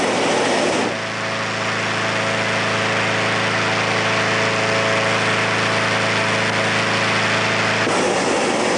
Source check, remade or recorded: recorded